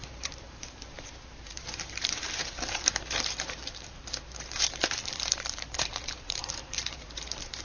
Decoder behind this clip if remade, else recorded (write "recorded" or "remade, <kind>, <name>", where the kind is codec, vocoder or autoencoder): remade, vocoder, BigVGAN v2